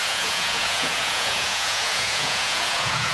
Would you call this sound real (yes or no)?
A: no